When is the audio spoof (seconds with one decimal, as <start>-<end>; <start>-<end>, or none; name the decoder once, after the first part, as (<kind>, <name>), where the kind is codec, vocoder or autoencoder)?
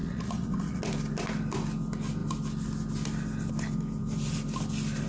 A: 0.0-0.8 (vocoder, Vocos)